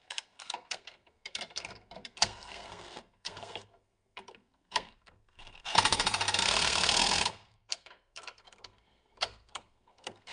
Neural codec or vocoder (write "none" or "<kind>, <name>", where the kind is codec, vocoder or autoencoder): codec, SNAC